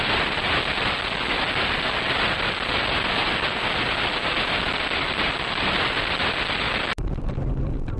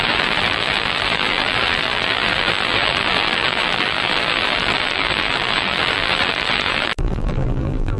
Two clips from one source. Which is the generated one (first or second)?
second